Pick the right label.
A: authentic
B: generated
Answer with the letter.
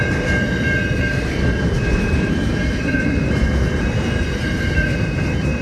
B